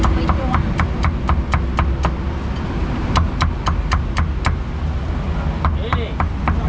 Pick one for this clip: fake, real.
real